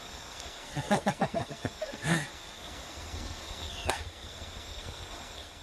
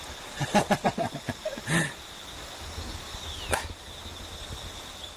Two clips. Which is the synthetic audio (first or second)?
first